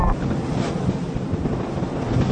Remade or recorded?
recorded